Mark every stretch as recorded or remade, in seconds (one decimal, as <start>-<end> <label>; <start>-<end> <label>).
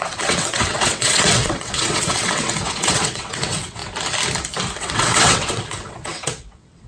0.0-3.8 remade; 3.8-4.8 recorded; 4.8-6.9 remade